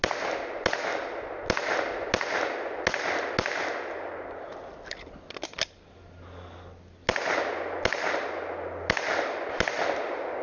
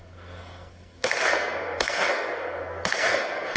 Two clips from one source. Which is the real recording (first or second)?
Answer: first